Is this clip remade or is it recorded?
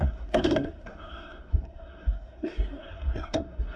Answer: remade